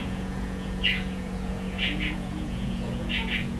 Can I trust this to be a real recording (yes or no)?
no